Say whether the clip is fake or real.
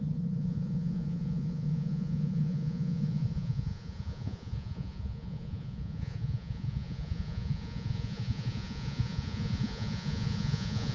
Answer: fake